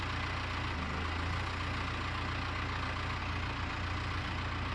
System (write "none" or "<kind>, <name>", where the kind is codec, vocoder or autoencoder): none